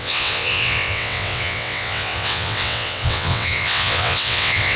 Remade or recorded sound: remade